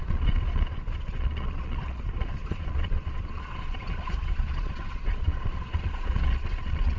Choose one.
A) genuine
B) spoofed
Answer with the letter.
B